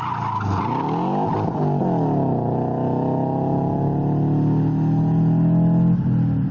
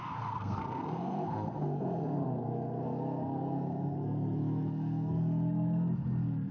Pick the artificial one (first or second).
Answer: second